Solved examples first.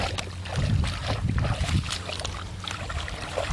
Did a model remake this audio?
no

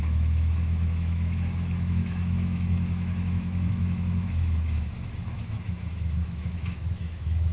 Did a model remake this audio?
yes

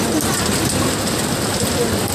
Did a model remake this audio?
no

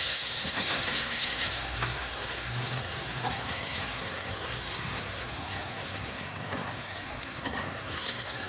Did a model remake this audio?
yes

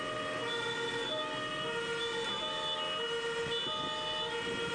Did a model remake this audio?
no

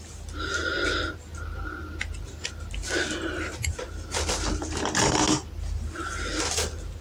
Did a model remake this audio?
no